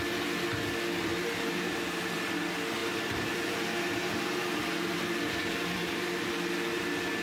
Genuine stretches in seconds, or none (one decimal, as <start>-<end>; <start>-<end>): 0.0-1.1; 2.2-2.8; 6.3-7.2